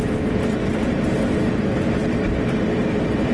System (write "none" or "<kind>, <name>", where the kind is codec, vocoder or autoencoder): none